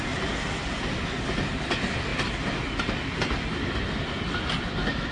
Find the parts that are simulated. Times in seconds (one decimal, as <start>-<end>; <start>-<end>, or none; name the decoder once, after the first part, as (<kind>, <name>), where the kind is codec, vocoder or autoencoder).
none